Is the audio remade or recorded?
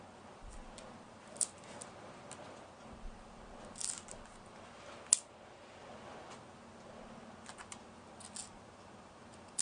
recorded